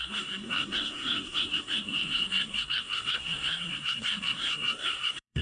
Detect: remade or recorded remade